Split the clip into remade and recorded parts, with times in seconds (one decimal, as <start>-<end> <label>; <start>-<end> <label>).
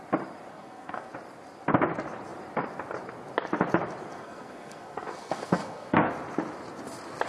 0.0-0.5 recorded; 0.5-1.1 remade; 1.1-4.1 recorded; 4.1-6.1 remade; 6.1-7.3 recorded